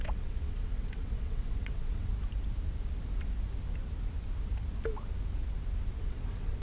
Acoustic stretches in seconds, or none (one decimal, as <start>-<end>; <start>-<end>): 2.1-6.0